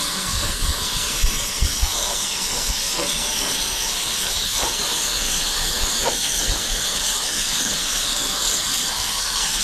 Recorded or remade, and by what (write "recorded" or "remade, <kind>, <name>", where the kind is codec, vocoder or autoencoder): remade, codec, SNAC